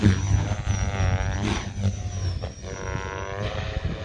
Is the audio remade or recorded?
recorded